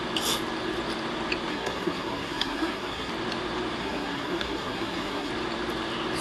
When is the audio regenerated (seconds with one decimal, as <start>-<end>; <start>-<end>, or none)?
1.5-3.1; 3.8-5.3